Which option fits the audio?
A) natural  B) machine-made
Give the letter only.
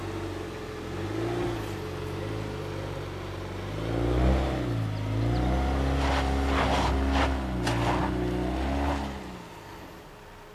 A